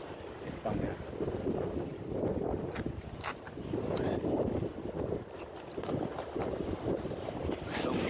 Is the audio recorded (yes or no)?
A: yes